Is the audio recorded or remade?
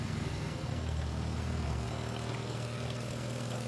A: remade